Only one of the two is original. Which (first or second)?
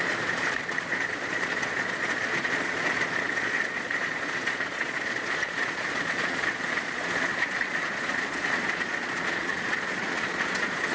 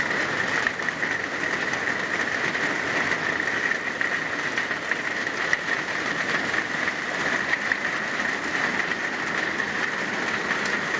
second